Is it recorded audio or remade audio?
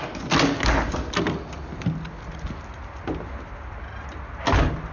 recorded